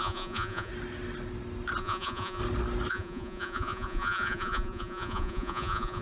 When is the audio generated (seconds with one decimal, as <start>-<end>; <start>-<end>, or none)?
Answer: 0.0-0.7; 1.8-2.4; 2.9-6.0